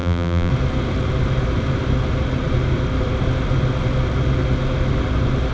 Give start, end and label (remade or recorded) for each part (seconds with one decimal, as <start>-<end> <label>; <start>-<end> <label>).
0.0-0.5 remade; 0.5-5.5 recorded